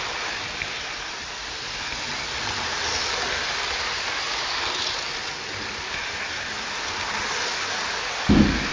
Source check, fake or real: real